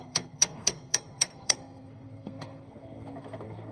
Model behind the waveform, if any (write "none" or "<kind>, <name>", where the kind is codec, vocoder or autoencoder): codec, SNAC